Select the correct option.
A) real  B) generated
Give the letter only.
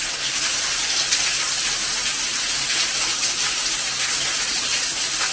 A